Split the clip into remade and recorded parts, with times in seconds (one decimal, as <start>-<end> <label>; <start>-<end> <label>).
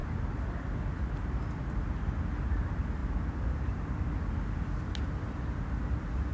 0.0-3.0 recorded; 3.0-4.1 remade; 4.1-6.3 recorded